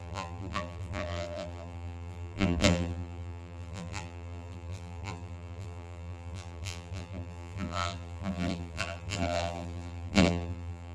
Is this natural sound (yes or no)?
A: no